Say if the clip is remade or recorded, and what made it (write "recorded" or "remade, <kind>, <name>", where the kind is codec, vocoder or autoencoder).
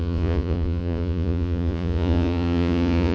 remade, vocoder, Vocos